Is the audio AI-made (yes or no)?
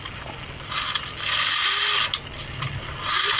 no